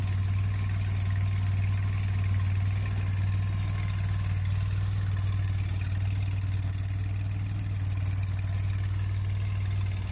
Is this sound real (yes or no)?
yes